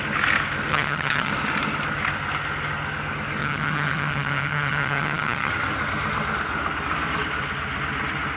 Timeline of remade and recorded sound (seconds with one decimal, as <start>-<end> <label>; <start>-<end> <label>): 0.0-0.7 recorded; 0.7-1.3 remade; 1.3-3.4 recorded; 3.4-5.5 remade; 5.5-8.4 recorded